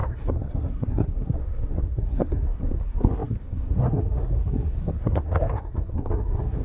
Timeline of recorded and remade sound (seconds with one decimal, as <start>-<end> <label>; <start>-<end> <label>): 0.0-6.6 remade